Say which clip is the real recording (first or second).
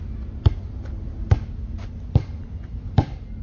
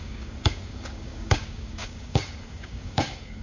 first